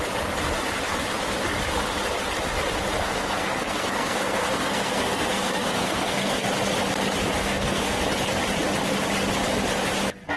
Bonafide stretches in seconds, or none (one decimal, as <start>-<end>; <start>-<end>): 0.0-3.0; 6.5-7.4; 8.0-10.4